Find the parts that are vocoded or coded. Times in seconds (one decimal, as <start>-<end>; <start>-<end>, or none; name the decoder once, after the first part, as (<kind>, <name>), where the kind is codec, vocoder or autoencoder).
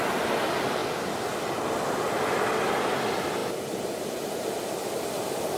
none